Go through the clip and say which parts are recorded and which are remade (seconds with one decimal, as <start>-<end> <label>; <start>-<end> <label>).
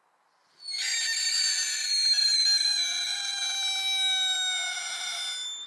0.0-5.7 recorded